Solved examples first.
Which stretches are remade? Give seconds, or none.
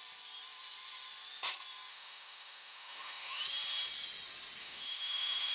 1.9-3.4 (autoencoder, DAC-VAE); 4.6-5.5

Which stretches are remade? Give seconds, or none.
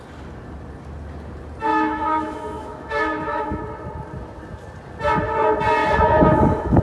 1.7-3.6 (autoencoder, DAC-VAE); 5.8-6.8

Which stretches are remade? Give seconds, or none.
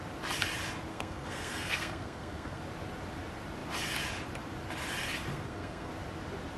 0.9-2.6 (codec, SNAC); 5.3-5.9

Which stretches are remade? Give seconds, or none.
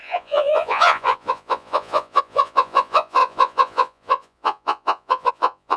0.0-5.8 (vocoder, Vocos)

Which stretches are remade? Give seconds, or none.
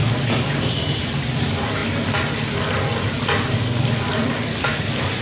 0.0-1.8 (vocoder, BigVGAN v2)